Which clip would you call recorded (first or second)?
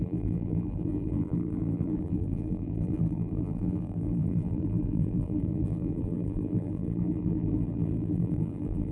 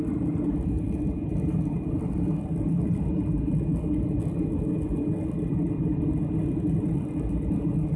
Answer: second